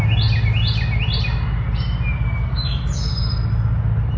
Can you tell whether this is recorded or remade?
recorded